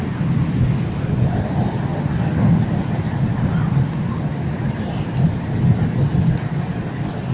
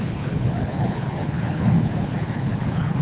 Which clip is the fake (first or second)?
second